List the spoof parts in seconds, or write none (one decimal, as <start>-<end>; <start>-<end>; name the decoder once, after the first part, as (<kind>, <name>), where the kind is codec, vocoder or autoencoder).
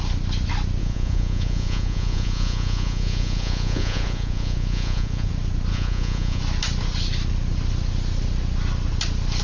0.8-5.3 (vocoder, Vocos); 5.7-6.4